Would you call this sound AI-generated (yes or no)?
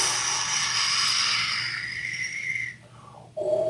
no